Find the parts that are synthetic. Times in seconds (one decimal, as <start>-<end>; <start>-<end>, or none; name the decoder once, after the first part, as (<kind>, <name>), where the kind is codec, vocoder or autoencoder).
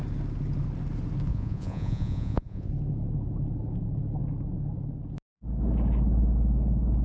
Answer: 1.3-2.7 (vocoder, Vocos)